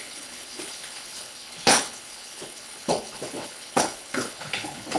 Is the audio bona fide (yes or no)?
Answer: no